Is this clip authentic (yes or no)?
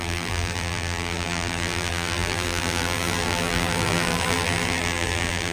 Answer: no